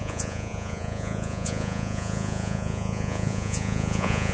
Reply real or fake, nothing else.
fake